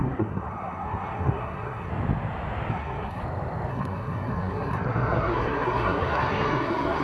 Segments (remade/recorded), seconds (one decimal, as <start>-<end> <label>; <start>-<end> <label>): 0.0-1.9 remade; 1.9-2.7 recorded; 2.7-3.2 remade; 3.2-3.7 recorded; 3.7-7.0 remade